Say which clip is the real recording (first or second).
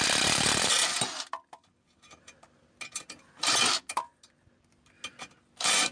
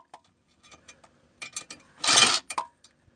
first